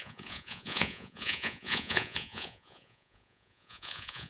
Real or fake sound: fake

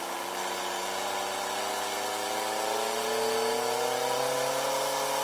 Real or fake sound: real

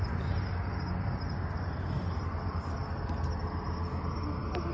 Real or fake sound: real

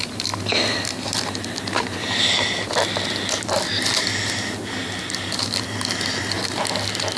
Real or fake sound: real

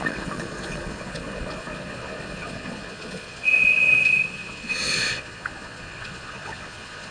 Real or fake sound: fake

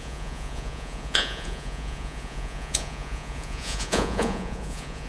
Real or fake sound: fake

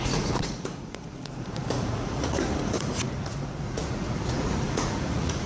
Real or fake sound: fake